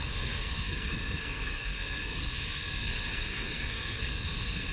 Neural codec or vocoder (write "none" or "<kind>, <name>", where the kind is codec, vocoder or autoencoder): codec, SNAC